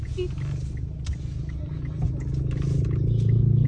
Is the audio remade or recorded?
recorded